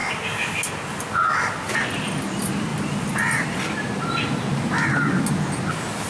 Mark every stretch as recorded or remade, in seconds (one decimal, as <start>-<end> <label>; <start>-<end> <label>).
0.0-2.7 recorded; 2.7-3.6 remade; 3.6-6.1 recorded